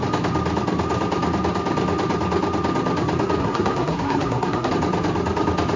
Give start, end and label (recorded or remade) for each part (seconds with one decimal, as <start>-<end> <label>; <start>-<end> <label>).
0.0-3.4 recorded; 3.4-4.7 remade; 4.7-5.8 recorded